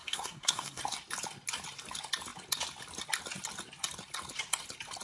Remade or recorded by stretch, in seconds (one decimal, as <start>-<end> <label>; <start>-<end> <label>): 0.0-0.8 remade; 0.8-5.0 recorded